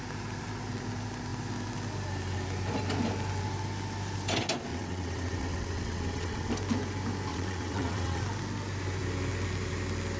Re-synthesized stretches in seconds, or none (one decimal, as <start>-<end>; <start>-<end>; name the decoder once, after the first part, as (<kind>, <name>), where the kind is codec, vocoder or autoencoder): 4.7-6.5 (vocoder, WaveNeXt); 7.3-8.2